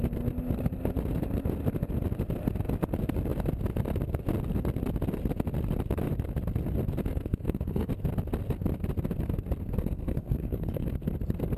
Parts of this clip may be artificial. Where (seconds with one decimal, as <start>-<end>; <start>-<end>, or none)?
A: 7.1-7.9; 9.8-10.9